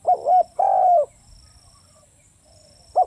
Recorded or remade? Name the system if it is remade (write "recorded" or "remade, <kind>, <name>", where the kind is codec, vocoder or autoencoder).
recorded